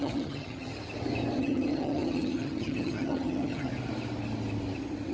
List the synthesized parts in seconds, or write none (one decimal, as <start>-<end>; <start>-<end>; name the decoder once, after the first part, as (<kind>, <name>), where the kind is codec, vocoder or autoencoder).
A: 0.0-0.7 (vocoder, HiFi-GAN); 1.4-3.7